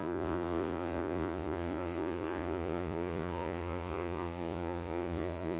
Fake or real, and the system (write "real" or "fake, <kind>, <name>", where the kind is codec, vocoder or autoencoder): fake, vocoder, Vocos